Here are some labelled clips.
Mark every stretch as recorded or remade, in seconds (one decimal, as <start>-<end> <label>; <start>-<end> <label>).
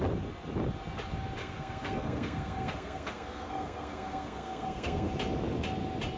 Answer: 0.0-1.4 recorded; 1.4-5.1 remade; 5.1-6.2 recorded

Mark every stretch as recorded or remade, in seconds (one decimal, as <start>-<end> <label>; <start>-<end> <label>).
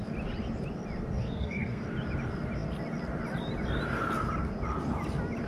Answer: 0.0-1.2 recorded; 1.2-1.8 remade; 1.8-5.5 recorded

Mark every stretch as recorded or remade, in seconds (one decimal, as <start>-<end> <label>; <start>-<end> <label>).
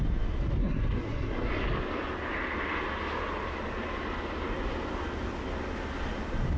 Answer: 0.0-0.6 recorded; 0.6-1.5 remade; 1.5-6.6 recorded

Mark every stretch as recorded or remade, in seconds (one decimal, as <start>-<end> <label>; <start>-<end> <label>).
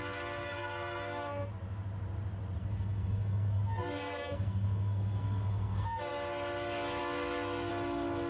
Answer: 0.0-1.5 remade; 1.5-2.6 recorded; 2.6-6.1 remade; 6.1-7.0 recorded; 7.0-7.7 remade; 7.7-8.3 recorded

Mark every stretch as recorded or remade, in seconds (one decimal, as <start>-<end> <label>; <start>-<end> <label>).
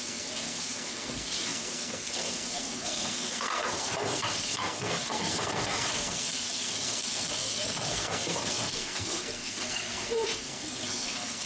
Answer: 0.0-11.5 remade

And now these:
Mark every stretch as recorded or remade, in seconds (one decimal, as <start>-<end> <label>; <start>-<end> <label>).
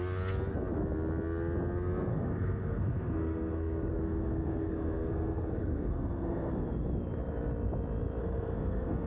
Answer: 0.0-2.1 recorded; 2.1-6.5 remade; 6.5-8.2 recorded; 8.2-9.1 remade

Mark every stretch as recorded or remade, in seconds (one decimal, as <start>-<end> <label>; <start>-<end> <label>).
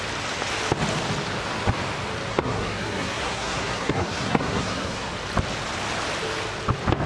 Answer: 0.0-2.3 recorded; 2.3-5.1 remade; 5.1-7.1 recorded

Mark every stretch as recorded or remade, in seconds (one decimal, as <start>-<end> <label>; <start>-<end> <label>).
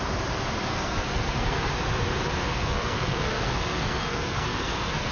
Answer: 0.0-0.7 recorded; 0.7-1.7 remade; 1.7-2.4 recorded; 2.4-5.1 remade